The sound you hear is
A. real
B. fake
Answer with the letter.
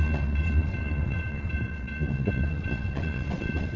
B